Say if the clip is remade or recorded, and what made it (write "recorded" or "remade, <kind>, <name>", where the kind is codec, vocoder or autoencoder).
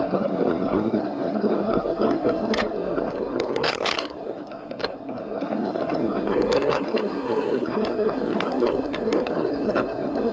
remade, codec, SNAC